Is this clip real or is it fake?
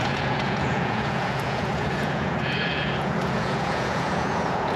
fake